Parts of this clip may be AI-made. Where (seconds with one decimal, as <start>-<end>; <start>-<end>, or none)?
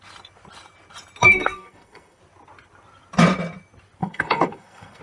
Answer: 1.2-2.2; 4.0-5.0